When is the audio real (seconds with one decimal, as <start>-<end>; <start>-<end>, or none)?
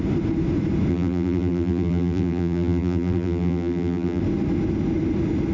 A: 0.0-0.9; 4.2-5.5